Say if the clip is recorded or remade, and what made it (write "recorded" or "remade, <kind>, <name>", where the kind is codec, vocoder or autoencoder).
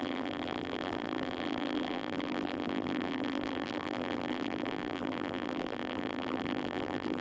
remade, vocoder, BigVGAN v2